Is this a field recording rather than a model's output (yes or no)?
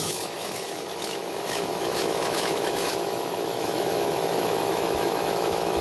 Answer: no